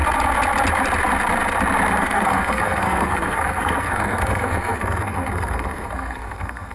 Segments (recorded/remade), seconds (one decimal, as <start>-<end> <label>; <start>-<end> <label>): 0.0-2.0 recorded; 2.0-6.7 remade

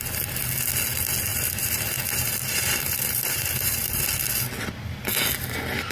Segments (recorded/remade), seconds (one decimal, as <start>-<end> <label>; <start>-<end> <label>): 0.0-1.3 recorded; 1.3-4.0 remade; 4.0-5.9 recorded